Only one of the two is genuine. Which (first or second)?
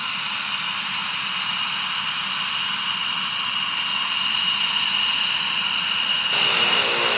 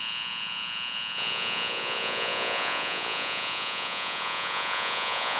first